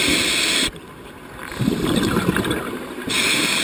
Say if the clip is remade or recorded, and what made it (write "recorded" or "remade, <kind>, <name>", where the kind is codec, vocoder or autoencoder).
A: recorded